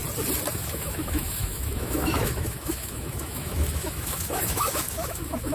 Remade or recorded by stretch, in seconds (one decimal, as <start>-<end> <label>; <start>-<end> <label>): 0.0-0.5 recorded; 0.5-5.5 remade